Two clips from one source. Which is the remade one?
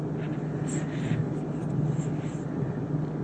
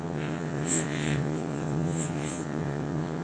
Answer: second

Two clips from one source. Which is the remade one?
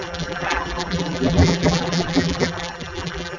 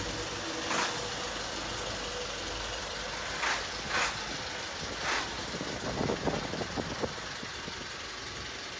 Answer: first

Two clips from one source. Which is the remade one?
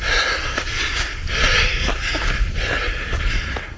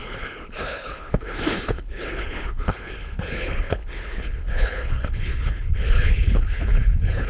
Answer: second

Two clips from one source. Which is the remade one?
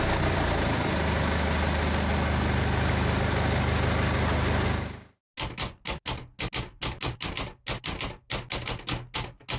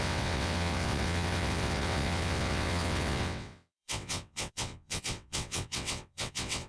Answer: second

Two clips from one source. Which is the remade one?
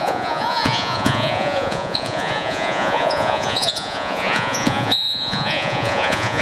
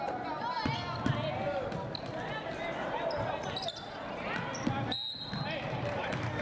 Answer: first